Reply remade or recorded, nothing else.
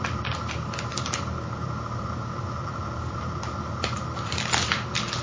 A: remade